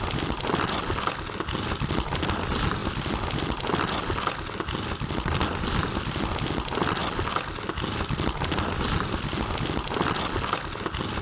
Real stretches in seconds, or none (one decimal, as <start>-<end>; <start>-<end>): 0.0-11.2